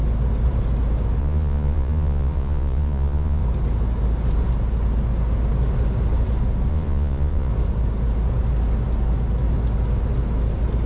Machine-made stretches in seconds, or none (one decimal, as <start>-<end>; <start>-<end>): 1.2-3.4; 6.7-7.5